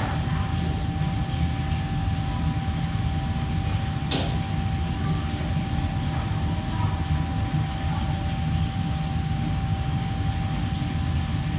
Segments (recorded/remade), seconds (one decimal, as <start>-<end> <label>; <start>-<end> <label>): 0.0-9.1 recorded; 9.1-10.3 remade; 10.3-11.6 recorded